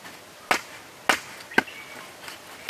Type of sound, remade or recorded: recorded